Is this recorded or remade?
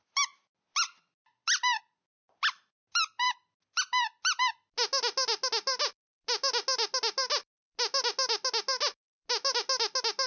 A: recorded